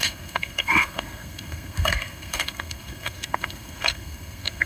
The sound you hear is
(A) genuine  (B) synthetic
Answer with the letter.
B